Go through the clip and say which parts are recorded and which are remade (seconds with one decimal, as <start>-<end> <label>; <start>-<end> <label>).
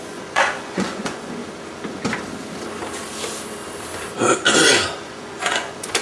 0.0-1.4 remade; 1.4-5.0 recorded; 5.0-6.0 remade